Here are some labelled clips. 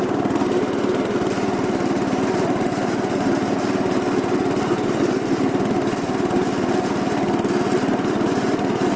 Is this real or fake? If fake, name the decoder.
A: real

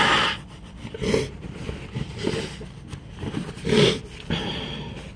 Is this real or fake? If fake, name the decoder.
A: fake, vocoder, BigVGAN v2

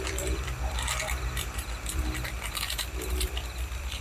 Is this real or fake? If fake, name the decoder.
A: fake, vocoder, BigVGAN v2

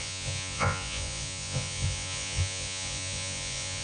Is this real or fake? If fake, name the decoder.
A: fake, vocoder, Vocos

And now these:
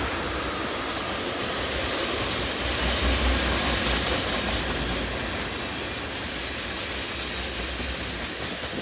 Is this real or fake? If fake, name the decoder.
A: real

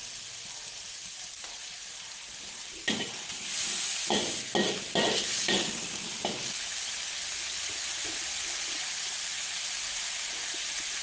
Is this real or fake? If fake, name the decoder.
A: fake, vocoder, BigVGAN v2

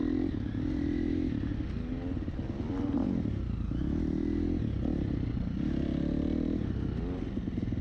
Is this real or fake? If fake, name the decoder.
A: real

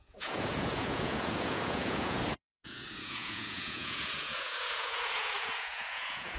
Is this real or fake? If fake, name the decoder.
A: fake, vocoder, Vocos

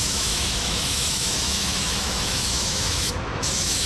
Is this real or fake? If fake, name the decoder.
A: fake, autoencoder, DAC-VAE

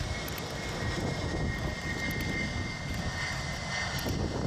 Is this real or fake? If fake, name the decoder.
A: real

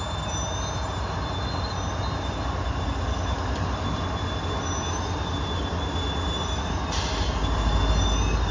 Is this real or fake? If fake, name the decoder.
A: real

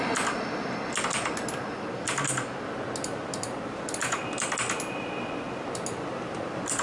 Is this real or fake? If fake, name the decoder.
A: real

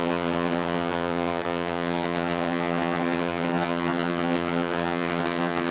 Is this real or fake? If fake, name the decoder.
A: fake, vocoder, HiFi-GAN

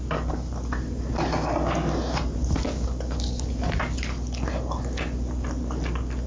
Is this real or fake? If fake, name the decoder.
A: real